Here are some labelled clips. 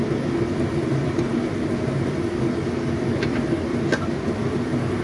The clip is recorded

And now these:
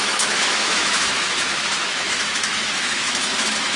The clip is remade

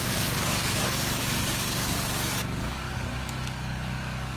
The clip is remade